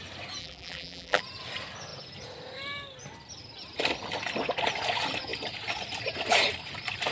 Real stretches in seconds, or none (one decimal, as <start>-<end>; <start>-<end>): 0.0-0.4; 1.2-7.1

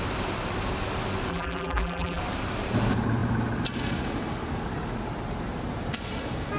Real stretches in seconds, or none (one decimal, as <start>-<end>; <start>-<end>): 0.0-1.3; 2.2-6.6